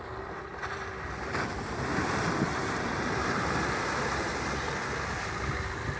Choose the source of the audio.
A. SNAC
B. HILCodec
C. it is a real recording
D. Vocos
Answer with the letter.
C